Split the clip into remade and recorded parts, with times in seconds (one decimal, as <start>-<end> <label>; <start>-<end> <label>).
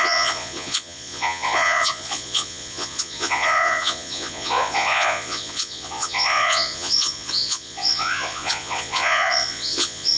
0.0-10.2 remade